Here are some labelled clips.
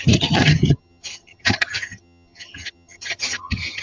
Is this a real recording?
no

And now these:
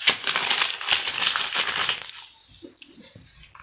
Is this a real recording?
yes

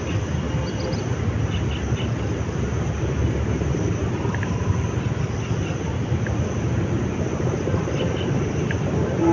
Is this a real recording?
yes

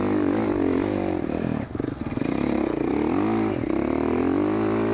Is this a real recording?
yes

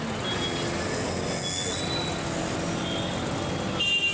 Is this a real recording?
yes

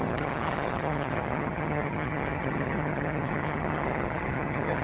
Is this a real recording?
no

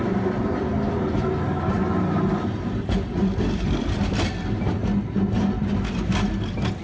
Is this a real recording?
yes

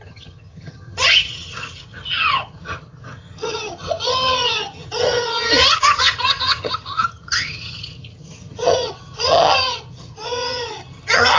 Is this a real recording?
no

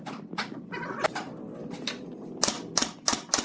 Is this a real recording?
yes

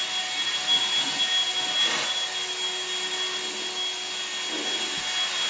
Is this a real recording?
yes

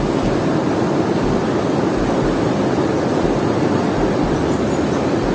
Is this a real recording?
yes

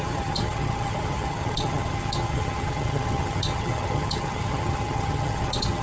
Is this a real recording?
no